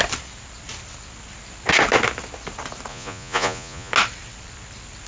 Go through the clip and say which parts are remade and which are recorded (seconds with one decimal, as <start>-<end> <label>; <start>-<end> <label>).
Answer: 0.0-2.9 recorded; 2.9-3.9 remade; 3.9-5.1 recorded